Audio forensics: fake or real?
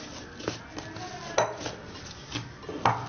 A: real